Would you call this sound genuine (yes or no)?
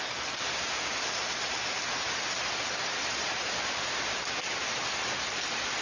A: yes